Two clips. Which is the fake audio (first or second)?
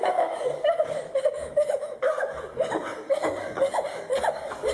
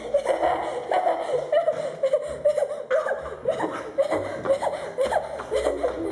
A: first